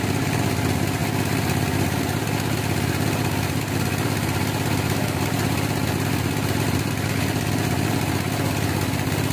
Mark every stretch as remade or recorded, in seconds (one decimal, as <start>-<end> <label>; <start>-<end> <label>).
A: 0.0-9.3 recorded